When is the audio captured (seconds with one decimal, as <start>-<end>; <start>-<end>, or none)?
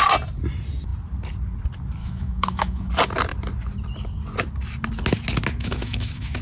0.0-2.0; 2.9-5.5